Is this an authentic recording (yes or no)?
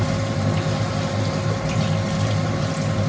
yes